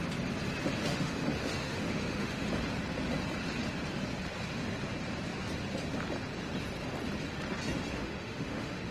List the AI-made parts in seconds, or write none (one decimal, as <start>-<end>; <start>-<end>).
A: 0.8-2.5; 7.9-8.9